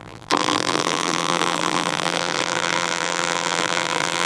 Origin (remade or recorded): remade